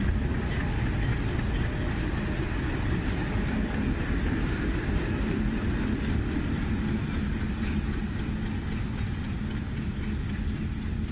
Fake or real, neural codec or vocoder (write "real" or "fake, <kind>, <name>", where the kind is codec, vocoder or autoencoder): real